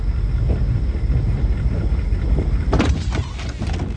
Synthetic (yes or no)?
no